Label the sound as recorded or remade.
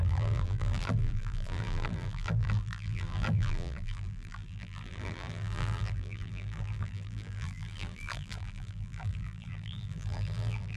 remade